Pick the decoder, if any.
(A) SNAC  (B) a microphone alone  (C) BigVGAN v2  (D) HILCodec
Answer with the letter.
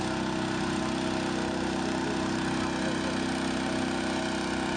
B